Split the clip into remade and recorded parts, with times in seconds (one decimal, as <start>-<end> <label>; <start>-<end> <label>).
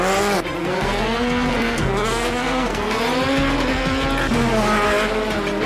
0.0-0.6 recorded; 0.6-3.0 remade; 3.0-5.7 recorded